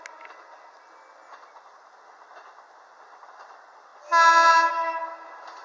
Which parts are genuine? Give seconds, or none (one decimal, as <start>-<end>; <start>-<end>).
0.0-5.6